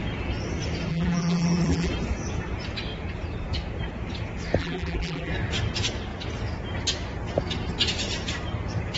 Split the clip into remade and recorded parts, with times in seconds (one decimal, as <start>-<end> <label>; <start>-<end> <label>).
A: 0.0-0.9 recorded; 0.9-1.9 remade; 1.9-4.6 recorded; 4.6-5.3 remade; 5.3-9.0 recorded